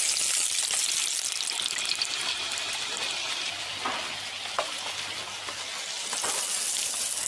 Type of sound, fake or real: real